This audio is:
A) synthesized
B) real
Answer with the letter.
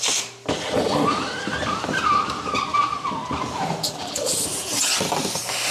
B